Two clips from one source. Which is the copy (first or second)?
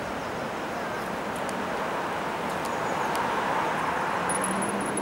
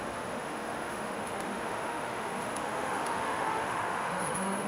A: second